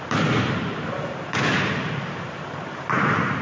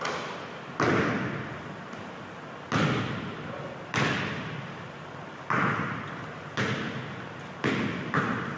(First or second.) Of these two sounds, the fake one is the first